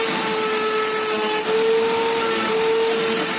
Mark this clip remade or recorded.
recorded